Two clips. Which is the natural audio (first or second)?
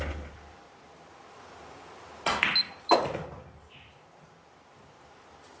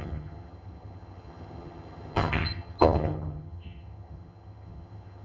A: first